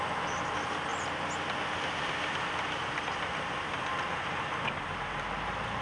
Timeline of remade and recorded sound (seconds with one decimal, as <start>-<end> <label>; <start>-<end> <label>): 0.0-5.8 recorded